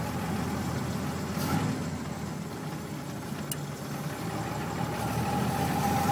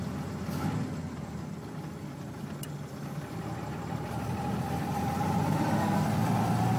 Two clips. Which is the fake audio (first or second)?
second